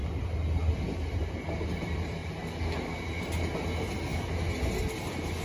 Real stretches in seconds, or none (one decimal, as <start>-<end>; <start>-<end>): 0.0-5.4